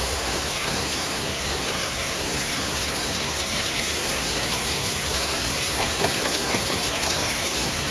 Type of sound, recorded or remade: remade